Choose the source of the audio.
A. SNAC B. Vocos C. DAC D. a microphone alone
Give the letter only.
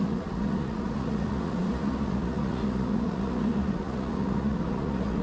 B